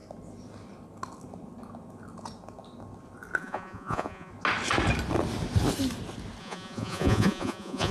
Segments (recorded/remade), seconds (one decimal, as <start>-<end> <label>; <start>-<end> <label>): 0.0-3.4 recorded; 3.4-4.3 remade; 4.3-6.4 recorded; 6.4-7.9 remade